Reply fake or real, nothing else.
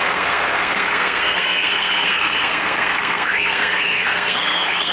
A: fake